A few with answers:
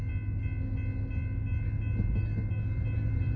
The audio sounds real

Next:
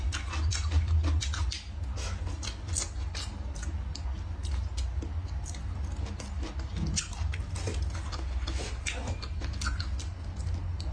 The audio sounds real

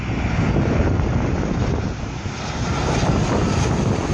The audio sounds real